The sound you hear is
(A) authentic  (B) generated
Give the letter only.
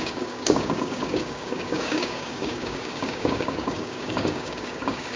B